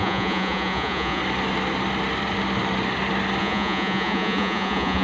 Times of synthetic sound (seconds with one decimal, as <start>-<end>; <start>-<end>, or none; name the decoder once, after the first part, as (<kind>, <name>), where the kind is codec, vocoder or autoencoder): 0.0-1.2 (vocoder, Vocos); 3.4-5.0